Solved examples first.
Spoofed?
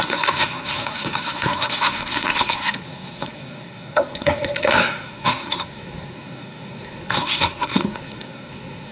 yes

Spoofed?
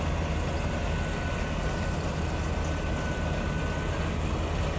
no